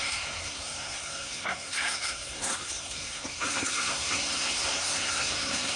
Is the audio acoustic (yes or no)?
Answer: no